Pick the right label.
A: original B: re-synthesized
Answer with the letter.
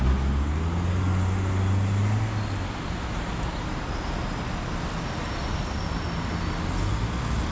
A